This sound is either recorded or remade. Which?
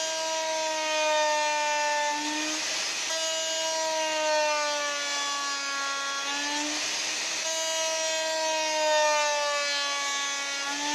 recorded